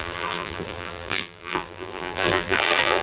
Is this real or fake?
fake